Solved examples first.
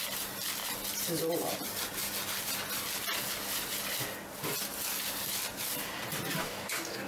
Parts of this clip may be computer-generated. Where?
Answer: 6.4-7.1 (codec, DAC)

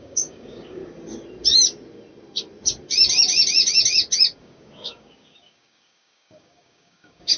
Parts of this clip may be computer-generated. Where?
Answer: 0.0-0.8 (codec, DAC); 4.4-7.4

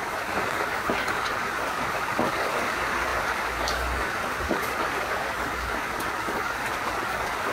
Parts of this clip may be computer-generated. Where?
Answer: 0.0-7.5 (codec, DAC)

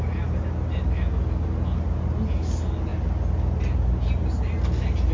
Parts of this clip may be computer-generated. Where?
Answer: none

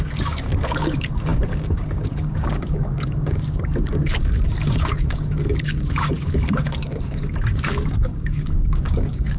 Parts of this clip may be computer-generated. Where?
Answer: 0.0-9.4 (codec, DAC)

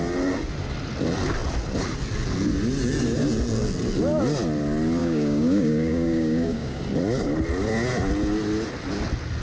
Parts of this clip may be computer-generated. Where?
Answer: 5.0-6.8 (codec, DAC)

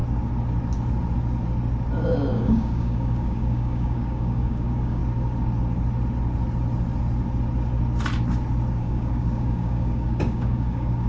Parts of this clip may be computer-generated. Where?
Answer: 2.3-5.0 (codec, DAC); 8.8-11.1